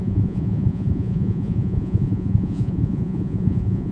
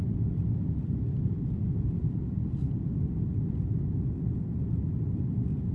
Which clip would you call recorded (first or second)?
second